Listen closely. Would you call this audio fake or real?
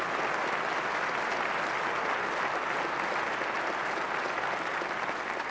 real